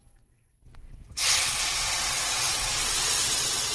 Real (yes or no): no